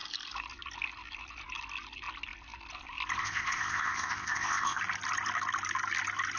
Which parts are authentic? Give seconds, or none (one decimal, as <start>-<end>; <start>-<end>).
0.0-3.2; 4.8-6.4